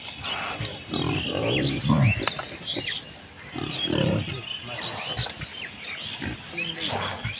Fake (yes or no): no